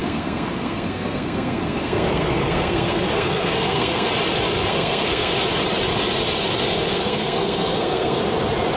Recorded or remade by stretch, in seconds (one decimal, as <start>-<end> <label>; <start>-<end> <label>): 0.0-4.1 remade; 4.1-4.7 recorded; 4.7-5.3 remade; 5.3-6.9 recorded; 6.9-8.2 remade; 8.2-8.8 recorded

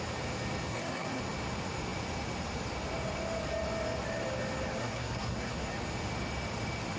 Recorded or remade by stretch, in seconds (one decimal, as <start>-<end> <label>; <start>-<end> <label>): 0.0-0.7 recorded; 0.7-1.2 remade; 1.2-4.8 recorded; 4.8-5.7 remade; 5.7-7.0 recorded

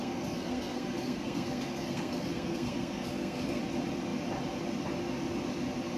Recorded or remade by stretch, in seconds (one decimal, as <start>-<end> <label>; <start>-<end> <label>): 0.0-3.6 remade; 3.6-6.0 recorded

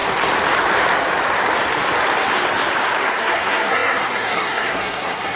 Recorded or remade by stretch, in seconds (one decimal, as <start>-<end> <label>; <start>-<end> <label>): 0.0-3.2 recorded; 3.2-5.4 remade

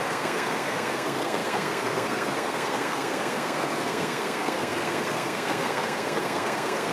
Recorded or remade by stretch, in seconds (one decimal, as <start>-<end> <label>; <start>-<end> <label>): 0.0-6.9 remade

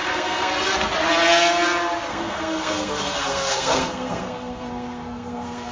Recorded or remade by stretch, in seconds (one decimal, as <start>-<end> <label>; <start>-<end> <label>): 0.0-0.5 remade; 0.5-2.1 recorded; 2.1-5.7 remade